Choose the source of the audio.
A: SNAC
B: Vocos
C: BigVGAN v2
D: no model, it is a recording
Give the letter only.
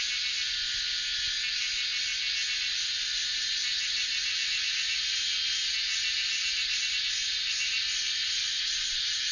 D